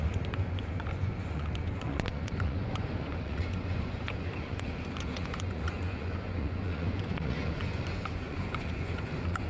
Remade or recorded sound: remade